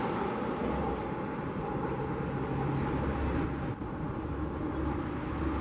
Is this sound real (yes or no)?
yes